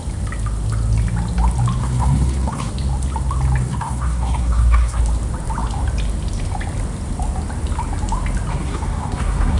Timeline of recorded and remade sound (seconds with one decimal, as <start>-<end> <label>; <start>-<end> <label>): 0.0-1.8 recorded; 1.8-2.7 remade; 2.7-3.6 recorded; 3.6-5.0 remade; 5.0-8.5 recorded; 8.5-9.6 remade